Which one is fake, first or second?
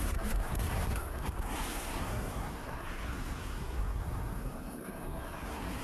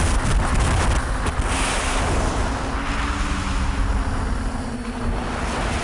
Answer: first